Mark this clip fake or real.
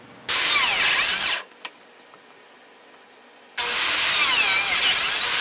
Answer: real